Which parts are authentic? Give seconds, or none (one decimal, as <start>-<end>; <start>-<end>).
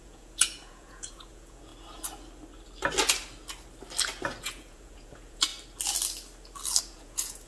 1.7-4.4; 5.5-6.8